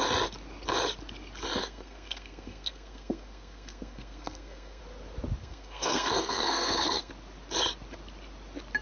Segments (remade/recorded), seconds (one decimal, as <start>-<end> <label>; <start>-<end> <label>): 0.0-1.6 recorded; 1.6-4.8 remade; 4.8-5.4 recorded; 5.4-7.1 remade; 7.1-8.8 recorded